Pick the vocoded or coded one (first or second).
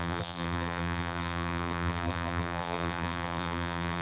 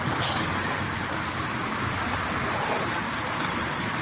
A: first